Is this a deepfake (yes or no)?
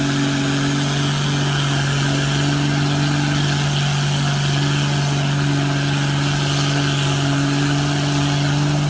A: no